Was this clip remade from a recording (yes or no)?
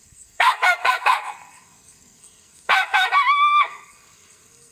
yes